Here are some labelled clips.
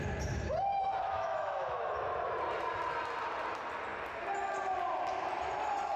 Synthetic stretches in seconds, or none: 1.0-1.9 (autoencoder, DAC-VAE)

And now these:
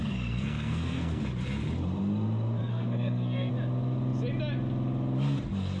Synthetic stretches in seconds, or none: 0.0-1.2 (codec, SNAC); 2.6-3.5

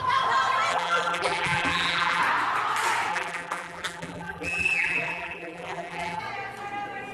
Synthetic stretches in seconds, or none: 0.7-2.2 (vocoder, BigVGAN v2); 3.1-6.2

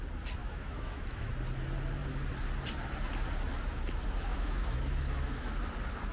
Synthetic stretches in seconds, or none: 0.4-1.3 (autoencoder, DAC-VAE); 4.3-5.5